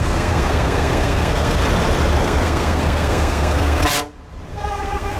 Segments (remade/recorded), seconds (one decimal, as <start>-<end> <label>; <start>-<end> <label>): 0.0-1.6 remade; 1.6-2.2 recorded; 2.2-3.8 remade; 3.8-4.5 recorded; 4.5-5.2 remade